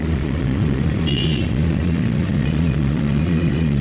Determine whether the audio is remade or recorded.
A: remade